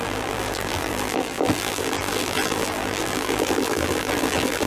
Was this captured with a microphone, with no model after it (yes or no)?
no